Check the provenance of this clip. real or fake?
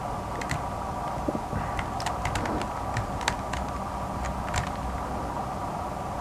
real